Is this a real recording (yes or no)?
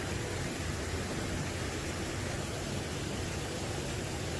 yes